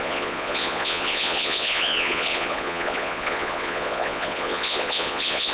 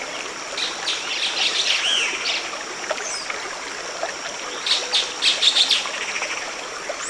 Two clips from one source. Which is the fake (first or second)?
first